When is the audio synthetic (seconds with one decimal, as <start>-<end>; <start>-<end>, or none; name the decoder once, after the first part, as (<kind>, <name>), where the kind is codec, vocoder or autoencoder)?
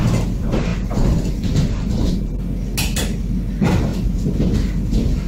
none